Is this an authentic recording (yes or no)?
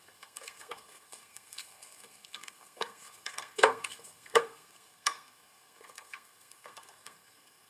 no